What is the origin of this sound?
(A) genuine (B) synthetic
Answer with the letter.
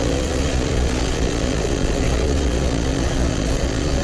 B